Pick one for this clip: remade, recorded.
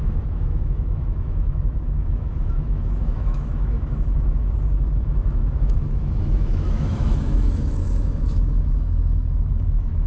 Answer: remade